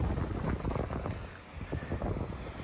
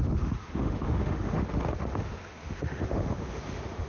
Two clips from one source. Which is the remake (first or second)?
second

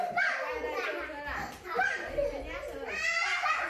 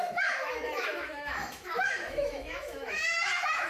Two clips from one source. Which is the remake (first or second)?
second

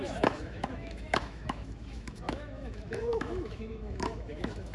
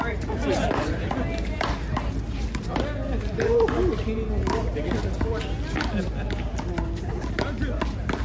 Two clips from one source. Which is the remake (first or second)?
first